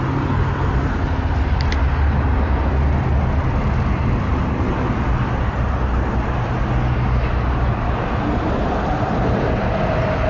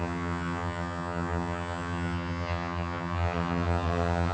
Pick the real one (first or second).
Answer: first